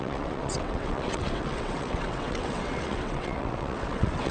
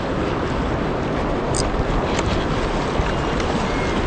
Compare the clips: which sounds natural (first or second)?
second